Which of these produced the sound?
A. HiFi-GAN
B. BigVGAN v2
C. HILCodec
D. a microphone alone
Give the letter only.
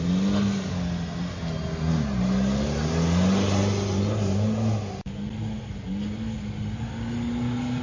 D